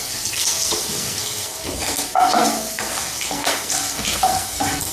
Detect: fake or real fake